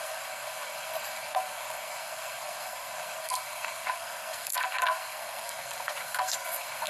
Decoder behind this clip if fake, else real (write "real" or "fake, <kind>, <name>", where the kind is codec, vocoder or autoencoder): fake, codec, SNAC